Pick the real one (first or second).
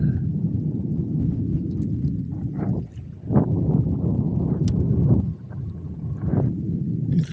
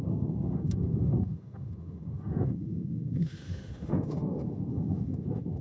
first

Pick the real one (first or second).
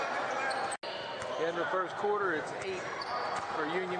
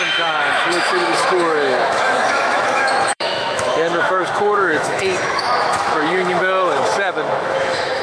first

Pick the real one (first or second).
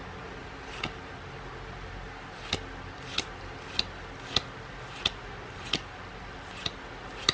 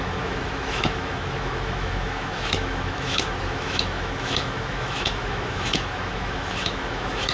first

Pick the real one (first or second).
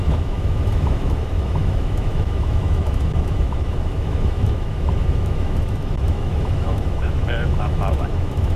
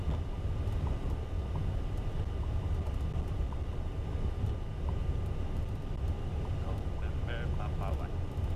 second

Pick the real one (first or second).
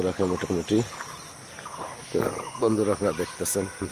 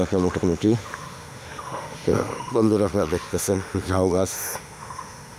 first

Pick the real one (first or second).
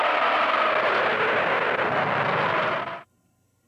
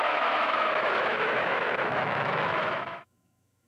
first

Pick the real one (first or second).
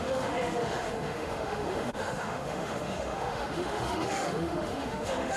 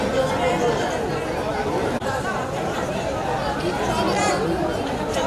second